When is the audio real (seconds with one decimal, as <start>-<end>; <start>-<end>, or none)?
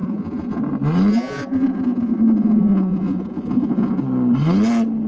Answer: 0.6-1.1; 4.0-5.1